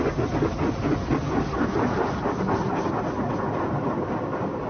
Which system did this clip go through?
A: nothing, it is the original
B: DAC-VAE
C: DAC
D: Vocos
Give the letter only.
A